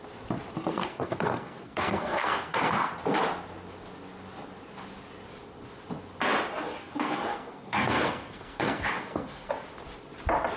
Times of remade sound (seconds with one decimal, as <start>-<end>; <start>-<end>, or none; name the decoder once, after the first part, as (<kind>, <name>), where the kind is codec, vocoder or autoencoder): 0.7-2.9 (codec, SNAC); 6.8-9.5